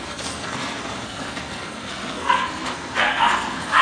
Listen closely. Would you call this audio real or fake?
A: fake